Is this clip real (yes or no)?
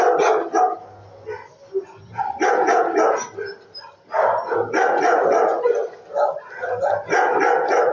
yes